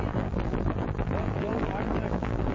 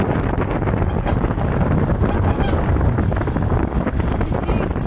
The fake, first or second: first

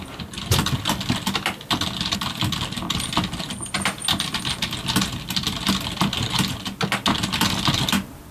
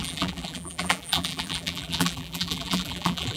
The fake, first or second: second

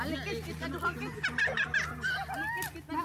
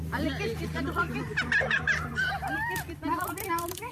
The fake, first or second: second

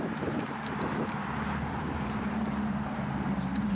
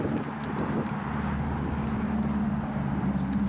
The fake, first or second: first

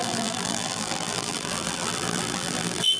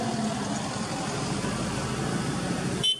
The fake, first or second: first